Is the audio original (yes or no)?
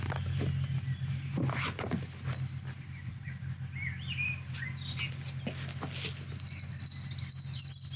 yes